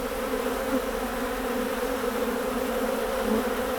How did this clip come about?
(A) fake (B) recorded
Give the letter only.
B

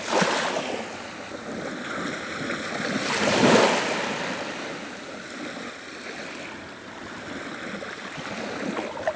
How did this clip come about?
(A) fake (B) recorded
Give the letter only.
B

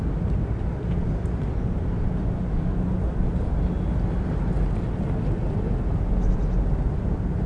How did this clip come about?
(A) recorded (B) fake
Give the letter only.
A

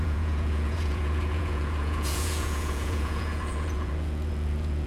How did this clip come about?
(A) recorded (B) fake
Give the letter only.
B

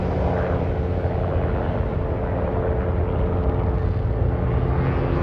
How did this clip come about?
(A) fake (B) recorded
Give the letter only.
B